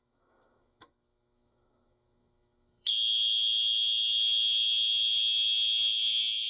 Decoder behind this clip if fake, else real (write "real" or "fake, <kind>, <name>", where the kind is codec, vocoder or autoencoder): fake, autoencoder, DAC-VAE